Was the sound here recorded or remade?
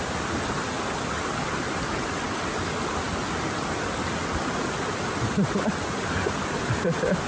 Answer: recorded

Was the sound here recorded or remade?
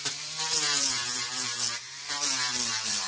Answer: remade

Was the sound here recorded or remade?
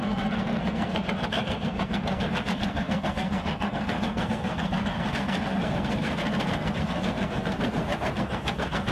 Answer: remade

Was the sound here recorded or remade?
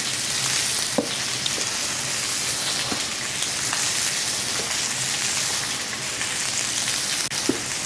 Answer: recorded